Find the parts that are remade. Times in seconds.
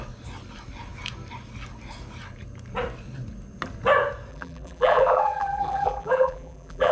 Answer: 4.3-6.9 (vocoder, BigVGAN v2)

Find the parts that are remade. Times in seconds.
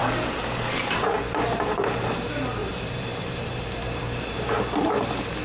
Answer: 2.6-4.5 (vocoder, BigVGAN v2)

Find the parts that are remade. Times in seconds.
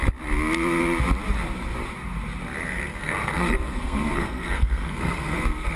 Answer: 2.7-5.8 (codec, SNAC)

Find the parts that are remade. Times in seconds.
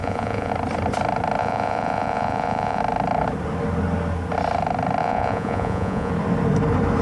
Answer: 0.0-0.5 (vocoder, Vocos); 1.4-2.8; 5.0-6.1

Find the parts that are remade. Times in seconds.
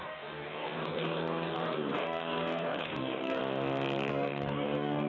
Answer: 0.0-3.4 (codec, DAC); 4.1-5.1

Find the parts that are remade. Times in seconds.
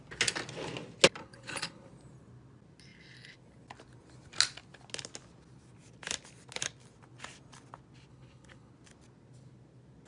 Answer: 1.2-1.9 (codec, HILCodec); 8.1-8.7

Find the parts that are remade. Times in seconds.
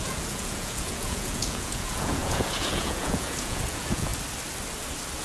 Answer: 0.0-4.1 (vocoder, Vocos)